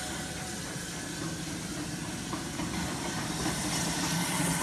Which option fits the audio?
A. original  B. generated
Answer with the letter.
A